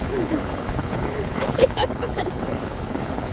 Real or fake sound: fake